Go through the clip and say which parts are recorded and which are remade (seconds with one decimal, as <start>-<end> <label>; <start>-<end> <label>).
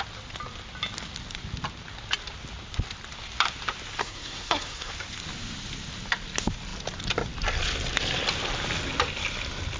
0.0-4.0 recorded; 4.0-4.9 remade; 4.9-9.8 recorded